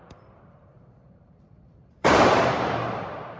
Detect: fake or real fake